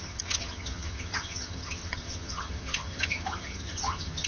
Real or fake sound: fake